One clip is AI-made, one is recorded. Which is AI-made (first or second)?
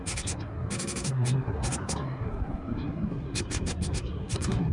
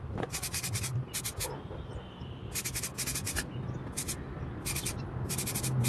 first